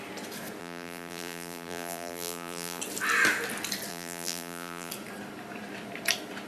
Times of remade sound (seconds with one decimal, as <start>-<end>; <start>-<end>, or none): 0.6-2.8; 3.9-4.9